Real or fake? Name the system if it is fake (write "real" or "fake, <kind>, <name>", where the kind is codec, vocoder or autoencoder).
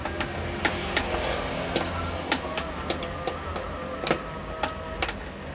real